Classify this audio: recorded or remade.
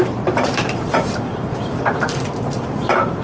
remade